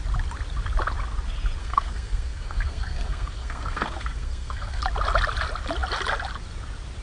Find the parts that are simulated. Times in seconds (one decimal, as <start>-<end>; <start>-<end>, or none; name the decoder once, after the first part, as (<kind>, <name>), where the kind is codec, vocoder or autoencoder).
1.6-4.8 (codec, SNAC)